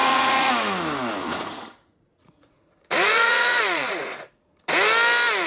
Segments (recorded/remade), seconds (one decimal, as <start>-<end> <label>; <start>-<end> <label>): 0.0-0.5 remade; 0.5-1.2 recorded; 1.2-4.5 remade; 4.5-5.5 recorded